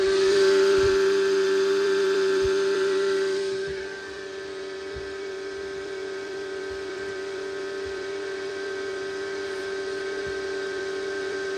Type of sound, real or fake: fake